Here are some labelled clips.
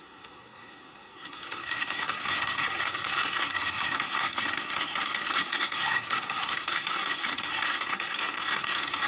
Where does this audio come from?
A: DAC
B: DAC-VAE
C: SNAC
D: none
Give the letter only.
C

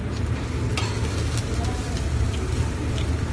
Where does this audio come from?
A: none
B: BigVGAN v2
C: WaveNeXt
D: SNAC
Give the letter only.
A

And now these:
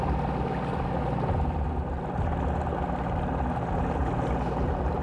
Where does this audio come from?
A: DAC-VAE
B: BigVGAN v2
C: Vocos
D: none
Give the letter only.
D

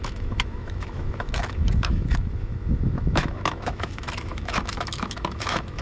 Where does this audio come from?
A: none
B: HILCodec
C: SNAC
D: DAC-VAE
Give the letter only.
D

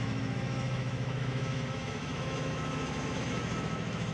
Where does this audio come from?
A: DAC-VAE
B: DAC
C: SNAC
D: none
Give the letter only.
A